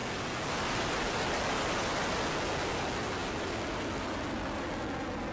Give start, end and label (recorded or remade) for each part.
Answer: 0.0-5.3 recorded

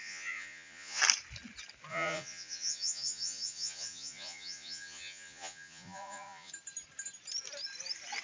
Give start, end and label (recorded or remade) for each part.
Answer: 0.0-1.0 remade; 1.0-1.9 recorded; 1.9-6.5 remade; 6.5-8.2 recorded

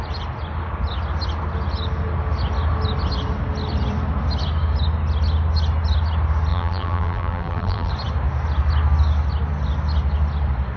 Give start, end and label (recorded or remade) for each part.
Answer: 0.0-6.5 recorded; 6.5-7.9 remade; 7.9-10.8 recorded

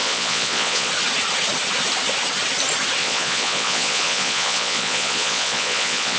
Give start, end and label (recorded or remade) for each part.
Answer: 0.0-0.9 remade; 0.9-3.0 recorded; 3.0-6.2 remade

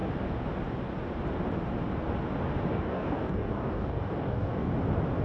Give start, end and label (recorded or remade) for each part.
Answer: 0.0-2.7 recorded; 2.7-4.7 remade; 4.7-5.2 recorded